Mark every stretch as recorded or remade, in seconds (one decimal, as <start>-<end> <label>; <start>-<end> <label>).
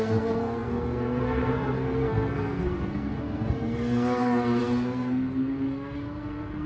0.0-6.7 remade